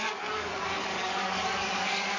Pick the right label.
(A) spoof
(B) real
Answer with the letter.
A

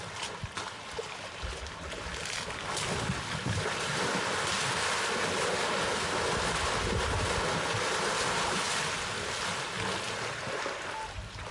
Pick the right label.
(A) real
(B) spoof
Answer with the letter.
A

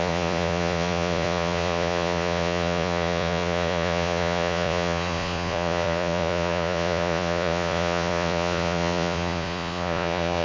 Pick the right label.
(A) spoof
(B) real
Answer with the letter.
A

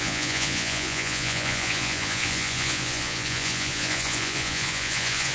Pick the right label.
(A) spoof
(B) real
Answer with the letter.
A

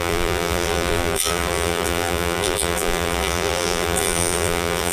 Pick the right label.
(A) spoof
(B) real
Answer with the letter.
A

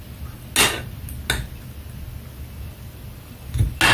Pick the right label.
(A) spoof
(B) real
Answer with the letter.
B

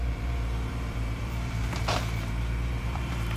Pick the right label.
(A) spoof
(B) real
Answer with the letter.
A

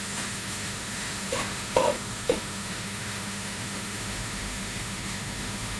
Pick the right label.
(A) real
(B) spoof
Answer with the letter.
B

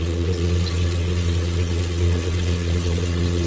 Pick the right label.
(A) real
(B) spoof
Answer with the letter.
B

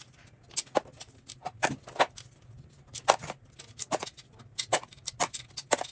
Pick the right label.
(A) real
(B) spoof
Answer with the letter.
A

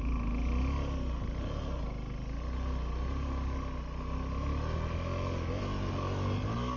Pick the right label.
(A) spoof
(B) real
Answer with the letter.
B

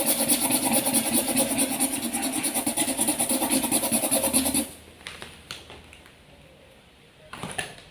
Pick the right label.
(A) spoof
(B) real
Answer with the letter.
B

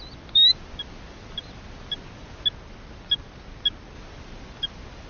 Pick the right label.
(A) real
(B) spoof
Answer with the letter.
A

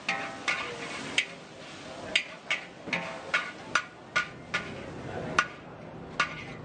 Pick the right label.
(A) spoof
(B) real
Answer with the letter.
B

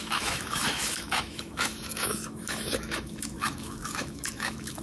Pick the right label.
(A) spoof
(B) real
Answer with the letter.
A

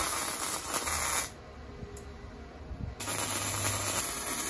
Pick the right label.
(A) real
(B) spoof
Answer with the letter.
A